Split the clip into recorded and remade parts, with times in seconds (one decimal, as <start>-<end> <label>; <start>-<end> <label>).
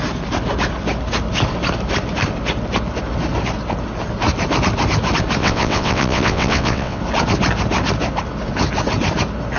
0.0-5.4 recorded; 5.4-7.0 remade; 7.0-9.6 recorded